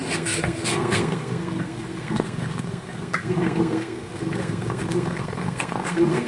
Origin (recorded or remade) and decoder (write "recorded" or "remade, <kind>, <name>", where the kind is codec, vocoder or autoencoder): remade, codec, SNAC